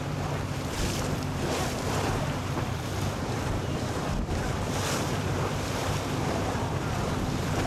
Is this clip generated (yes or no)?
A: yes